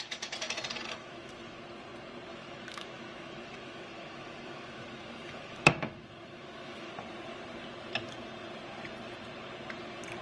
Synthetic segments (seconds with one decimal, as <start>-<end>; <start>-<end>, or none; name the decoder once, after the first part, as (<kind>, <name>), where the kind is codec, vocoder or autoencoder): 1.0-1.6 (autoencoder, DAC-VAE); 2.3-6.9